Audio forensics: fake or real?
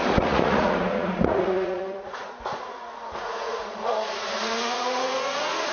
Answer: fake